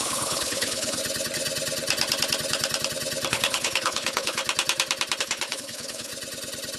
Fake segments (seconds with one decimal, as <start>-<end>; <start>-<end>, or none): 0.0-1.0; 3.3-4.4; 5.2-6.1